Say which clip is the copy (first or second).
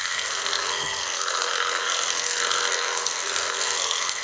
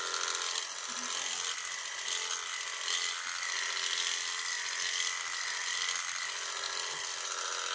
first